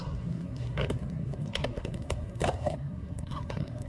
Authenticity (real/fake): fake